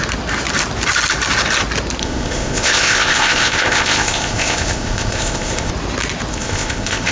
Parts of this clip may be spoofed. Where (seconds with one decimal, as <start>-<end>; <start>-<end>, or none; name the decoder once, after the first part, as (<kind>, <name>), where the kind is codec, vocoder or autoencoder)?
2.0-5.7 (codec, ZipCodec); 6.3-7.1